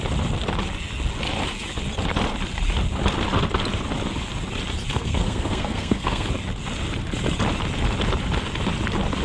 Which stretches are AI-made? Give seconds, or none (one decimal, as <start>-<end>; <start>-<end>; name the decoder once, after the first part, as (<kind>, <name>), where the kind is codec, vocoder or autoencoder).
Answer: 4.9-6.3 (codec, SNAC)